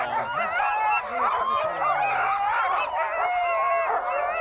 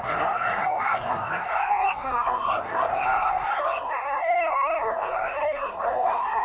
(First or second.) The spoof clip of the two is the second